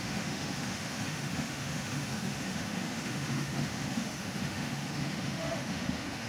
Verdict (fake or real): fake